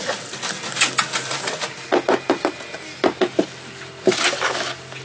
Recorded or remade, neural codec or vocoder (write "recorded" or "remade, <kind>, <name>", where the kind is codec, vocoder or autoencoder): recorded